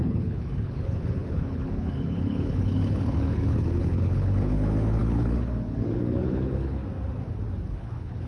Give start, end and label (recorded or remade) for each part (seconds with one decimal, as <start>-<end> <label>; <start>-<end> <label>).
0.0-6.8 remade; 6.8-7.7 recorded; 7.7-8.3 remade